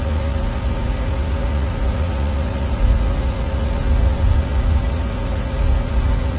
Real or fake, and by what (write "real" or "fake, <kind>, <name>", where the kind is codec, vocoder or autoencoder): fake, vocoder, Vocos